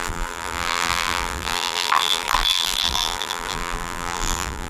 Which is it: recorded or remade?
remade